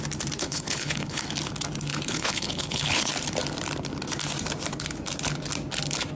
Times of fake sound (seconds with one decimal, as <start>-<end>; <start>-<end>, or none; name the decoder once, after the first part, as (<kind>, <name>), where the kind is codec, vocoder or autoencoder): 0.4-1.2 (codec, HILCodec); 1.9-3.1